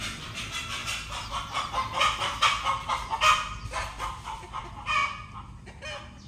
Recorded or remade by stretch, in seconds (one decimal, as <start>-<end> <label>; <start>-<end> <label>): 0.0-6.3 recorded